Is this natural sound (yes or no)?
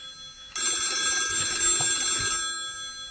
yes